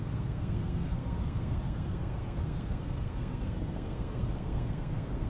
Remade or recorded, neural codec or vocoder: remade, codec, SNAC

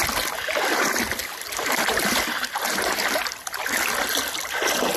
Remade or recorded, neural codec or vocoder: recorded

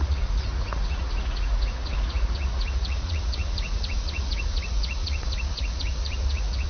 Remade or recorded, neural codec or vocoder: remade, vocoder, Vocos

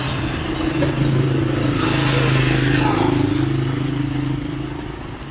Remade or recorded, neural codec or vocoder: recorded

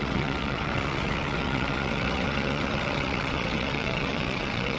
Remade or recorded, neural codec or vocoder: remade, vocoder, WaveNeXt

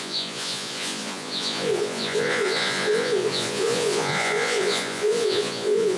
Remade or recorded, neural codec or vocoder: remade, vocoder, Vocos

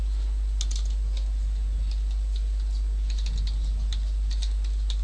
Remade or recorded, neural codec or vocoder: recorded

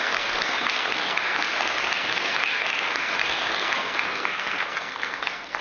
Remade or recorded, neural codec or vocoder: remade, codec, SNAC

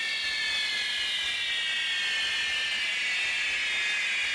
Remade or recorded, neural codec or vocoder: recorded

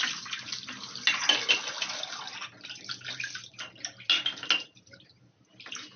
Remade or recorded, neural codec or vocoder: recorded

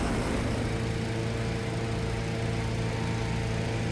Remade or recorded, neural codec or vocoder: recorded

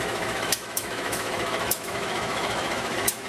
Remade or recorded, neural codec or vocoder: remade, autoencoder, DAC-VAE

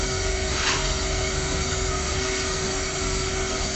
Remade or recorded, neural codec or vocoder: remade, codec, SNAC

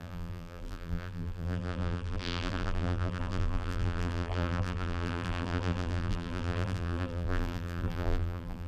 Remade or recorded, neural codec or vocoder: remade, vocoder, BigVGAN v2